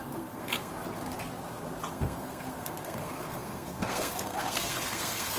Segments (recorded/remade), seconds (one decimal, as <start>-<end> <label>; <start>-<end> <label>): 0.0-0.7 remade; 0.7-1.9 recorded; 1.9-5.4 remade